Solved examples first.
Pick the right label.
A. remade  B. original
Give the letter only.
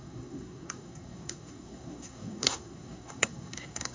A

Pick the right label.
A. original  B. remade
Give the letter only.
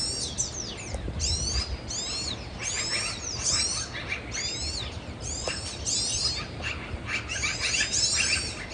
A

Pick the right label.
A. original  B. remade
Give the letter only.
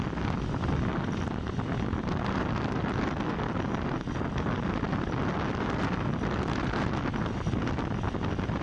A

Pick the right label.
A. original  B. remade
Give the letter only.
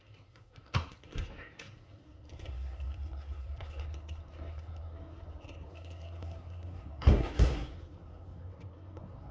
B